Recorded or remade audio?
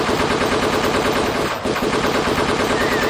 recorded